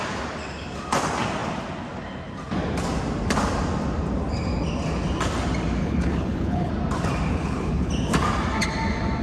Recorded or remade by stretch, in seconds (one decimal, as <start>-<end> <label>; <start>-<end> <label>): 0.0-5.8 recorded; 5.8-6.7 remade; 6.7-7.3 recorded; 7.3-7.9 remade; 7.9-9.2 recorded